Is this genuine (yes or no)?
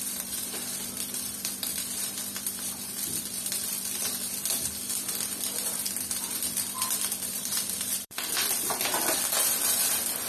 no